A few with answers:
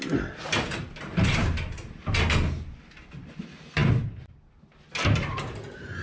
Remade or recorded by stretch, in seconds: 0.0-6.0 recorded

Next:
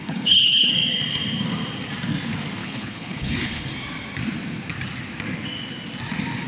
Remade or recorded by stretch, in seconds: 0.0-0.7 remade; 0.7-2.6 recorded; 2.6-3.7 remade; 3.7-6.5 recorded

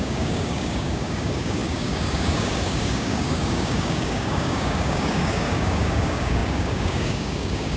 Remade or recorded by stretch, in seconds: 0.0-7.8 remade

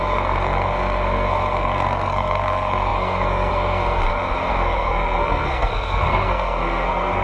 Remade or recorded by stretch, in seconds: 0.0-7.2 remade